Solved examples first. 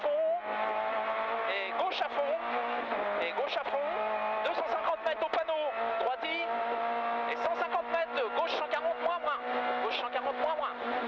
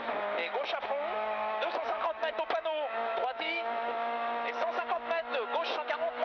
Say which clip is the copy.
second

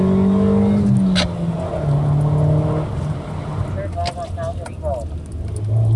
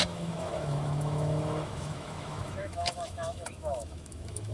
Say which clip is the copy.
second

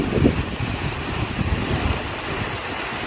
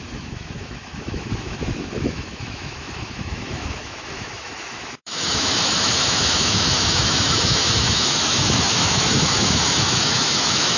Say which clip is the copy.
second